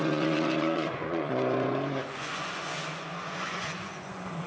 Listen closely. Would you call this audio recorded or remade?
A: remade